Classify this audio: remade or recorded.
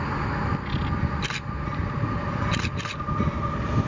recorded